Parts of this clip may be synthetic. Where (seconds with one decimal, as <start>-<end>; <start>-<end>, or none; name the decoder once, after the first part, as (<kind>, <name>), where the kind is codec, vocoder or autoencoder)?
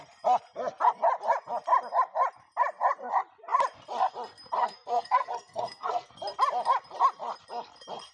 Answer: 4.6-6.1 (codec, SNAC)